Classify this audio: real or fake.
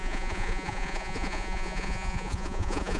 fake